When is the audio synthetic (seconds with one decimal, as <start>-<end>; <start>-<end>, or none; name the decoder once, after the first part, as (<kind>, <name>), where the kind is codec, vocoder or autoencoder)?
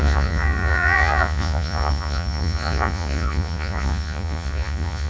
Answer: 0.0-5.1 (vocoder, Vocos)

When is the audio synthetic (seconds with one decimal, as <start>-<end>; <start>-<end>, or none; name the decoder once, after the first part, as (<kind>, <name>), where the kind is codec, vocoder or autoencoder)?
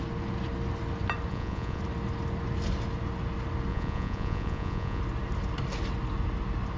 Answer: 1.3-1.8 (vocoder, Vocos); 3.7-5.0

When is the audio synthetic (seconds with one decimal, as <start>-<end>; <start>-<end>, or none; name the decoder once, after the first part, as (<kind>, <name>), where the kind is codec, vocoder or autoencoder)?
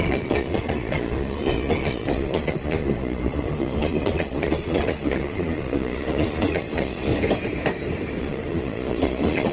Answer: 0.0-7.1 (vocoder, Vocos); 8.2-9.5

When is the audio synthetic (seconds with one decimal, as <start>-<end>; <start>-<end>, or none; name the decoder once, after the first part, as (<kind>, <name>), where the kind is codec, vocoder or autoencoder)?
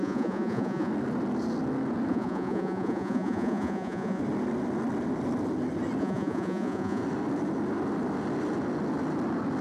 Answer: 0.0-0.9 (vocoder, Vocos); 2.1-4.2; 6.0-7.0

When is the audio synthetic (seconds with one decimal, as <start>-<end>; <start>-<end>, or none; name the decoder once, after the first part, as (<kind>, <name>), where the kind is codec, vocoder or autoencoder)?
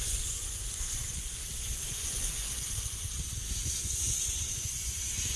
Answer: 0.0-5.4 (vocoder, Vocos)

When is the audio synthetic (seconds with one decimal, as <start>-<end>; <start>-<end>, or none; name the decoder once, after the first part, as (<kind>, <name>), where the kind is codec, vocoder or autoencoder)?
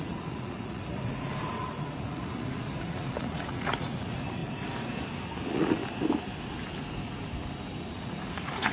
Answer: 0.0-4.4 (vocoder, Vocos); 5.2-5.8; 7.8-8.7